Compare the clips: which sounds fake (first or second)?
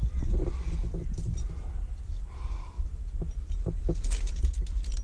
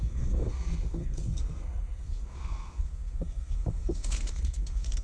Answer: second